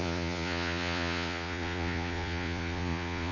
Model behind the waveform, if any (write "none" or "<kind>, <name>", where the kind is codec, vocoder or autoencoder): vocoder, Vocos